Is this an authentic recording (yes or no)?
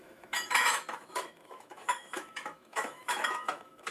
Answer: no